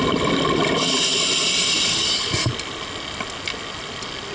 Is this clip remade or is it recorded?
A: recorded